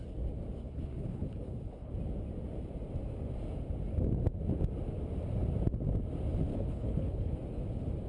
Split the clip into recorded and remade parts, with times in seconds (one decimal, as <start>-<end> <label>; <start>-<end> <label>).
0.0-0.6 recorded; 0.6-1.9 remade; 1.9-6.5 recorded; 6.5-7.3 remade; 7.3-8.1 recorded